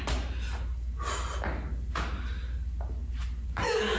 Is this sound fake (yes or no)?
no